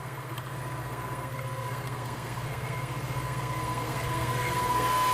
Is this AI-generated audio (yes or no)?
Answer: yes